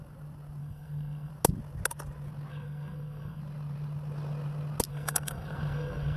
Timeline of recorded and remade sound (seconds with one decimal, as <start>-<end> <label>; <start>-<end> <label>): 0.0-0.6 recorded; 0.6-1.3 remade; 1.3-2.5 recorded; 2.5-3.4 remade; 3.4-4.9 recorded; 4.9-6.2 remade